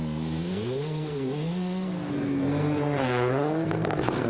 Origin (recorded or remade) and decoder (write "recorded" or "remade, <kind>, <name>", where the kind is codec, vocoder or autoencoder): remade, codec, SNAC